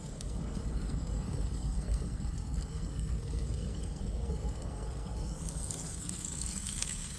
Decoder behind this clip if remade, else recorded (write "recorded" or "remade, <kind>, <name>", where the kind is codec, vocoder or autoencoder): remade, codec, SNAC